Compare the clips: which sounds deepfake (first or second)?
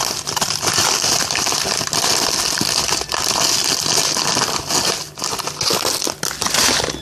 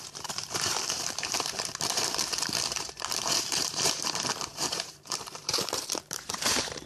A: second